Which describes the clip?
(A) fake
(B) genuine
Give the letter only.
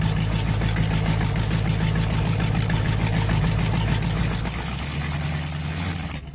B